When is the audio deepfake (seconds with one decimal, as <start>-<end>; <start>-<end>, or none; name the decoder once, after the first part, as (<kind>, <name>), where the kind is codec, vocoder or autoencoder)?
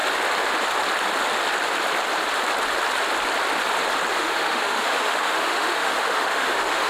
4.1-6.9 (autoencoder, DAC-VAE)